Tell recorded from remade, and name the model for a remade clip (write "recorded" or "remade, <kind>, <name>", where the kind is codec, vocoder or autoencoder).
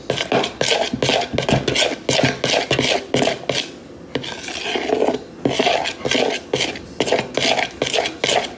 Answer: recorded